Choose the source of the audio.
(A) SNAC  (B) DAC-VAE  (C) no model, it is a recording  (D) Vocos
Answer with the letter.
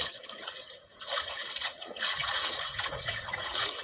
D